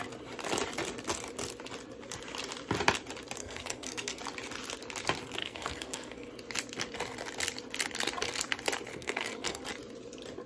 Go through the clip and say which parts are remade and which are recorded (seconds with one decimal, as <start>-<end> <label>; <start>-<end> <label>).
0.0-3.4 recorded; 3.4-4.2 remade; 4.2-5.4 recorded; 5.4-6.3 remade; 6.3-8.9 recorded; 8.9-9.6 remade; 9.6-10.5 recorded